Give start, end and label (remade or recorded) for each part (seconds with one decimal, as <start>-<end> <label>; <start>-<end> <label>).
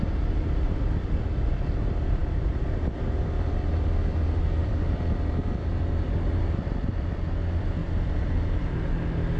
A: 0.0-2.2 recorded; 2.2-2.8 remade; 2.8-7.8 recorded; 7.8-8.4 remade; 8.4-9.4 recorded